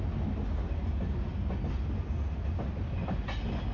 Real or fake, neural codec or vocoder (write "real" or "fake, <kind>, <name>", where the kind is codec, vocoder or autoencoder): real